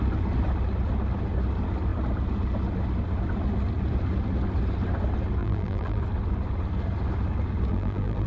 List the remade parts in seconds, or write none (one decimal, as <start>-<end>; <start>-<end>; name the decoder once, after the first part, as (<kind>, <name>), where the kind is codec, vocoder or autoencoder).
5.4-6.0 (vocoder, BigVGAN v2); 7.7-8.3